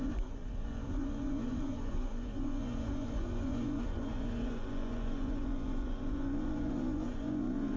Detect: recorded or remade remade